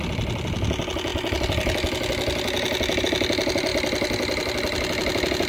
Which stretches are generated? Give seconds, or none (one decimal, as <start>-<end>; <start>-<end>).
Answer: none